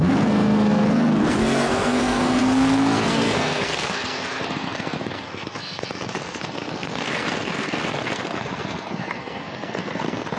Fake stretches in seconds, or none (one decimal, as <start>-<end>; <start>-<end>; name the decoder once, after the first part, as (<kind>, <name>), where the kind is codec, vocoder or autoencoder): 0.0-10.4 (codec, SNAC)